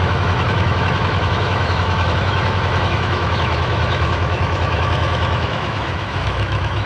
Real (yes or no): no